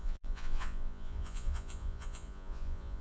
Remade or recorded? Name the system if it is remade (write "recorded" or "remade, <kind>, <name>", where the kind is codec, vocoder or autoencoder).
remade, vocoder, Vocos